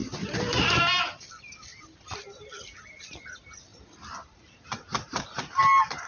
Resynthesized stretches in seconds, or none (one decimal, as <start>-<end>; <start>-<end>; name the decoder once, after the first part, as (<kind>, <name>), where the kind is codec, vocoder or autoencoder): 0.0-0.8 (vocoder, BigVGAN v2); 1.7-2.2; 3.7-6.1